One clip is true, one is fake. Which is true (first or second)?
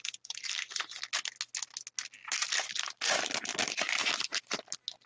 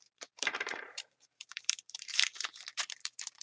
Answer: first